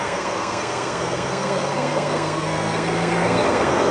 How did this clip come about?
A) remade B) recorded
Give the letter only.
A